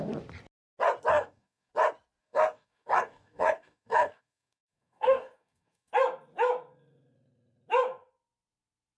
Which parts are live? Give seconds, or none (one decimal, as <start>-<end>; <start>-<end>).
0.0-1.1; 1.7-2.2; 5.9-9.0